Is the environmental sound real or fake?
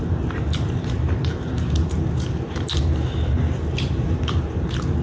fake